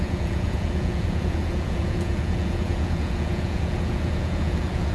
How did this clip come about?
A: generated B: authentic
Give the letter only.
A